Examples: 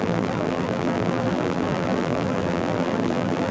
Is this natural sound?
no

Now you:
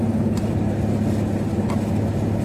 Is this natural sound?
yes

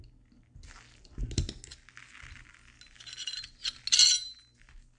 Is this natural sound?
yes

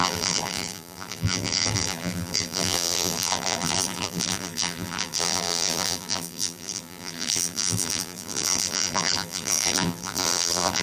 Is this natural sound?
no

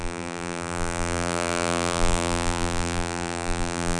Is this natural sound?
no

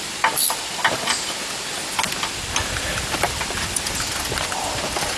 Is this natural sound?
yes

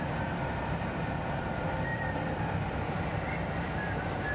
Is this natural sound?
no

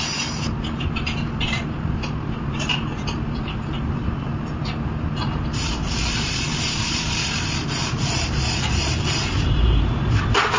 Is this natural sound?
no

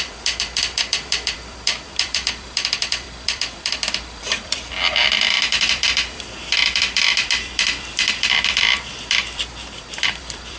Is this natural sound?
no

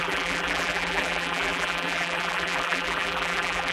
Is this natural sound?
no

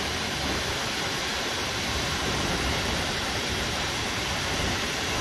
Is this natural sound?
no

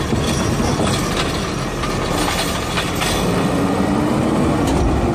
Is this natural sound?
yes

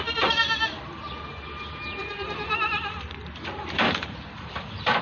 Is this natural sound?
no